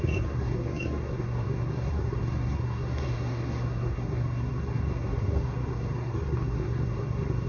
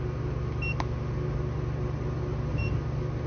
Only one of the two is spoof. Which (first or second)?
first